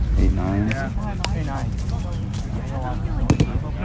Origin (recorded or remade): recorded